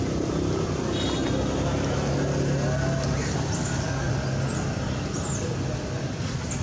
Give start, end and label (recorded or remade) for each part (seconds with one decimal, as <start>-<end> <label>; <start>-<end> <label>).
0.0-3.6 recorded; 3.6-4.1 remade; 4.1-6.6 recorded